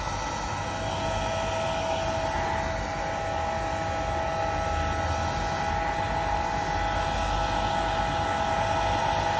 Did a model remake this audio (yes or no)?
no